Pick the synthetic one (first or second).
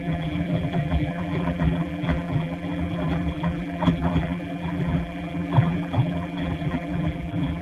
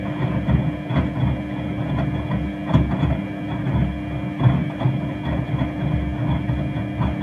first